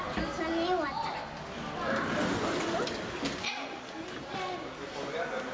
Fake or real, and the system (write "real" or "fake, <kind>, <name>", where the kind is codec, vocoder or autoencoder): real